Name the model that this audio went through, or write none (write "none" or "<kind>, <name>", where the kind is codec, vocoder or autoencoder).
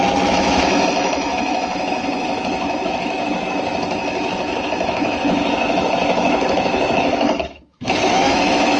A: autoencoder, DAC-VAE